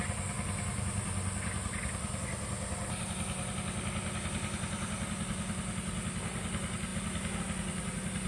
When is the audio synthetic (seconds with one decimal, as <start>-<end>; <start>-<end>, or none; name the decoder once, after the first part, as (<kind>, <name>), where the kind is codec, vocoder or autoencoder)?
none